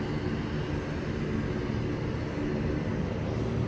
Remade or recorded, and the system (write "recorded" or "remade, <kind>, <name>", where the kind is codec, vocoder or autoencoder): recorded